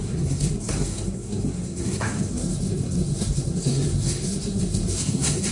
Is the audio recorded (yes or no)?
no